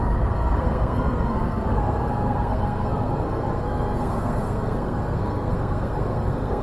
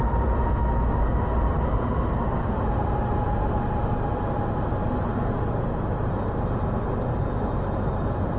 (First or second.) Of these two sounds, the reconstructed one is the first